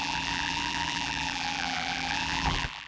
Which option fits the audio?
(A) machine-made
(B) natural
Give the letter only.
A